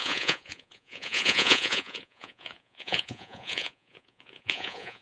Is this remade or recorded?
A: remade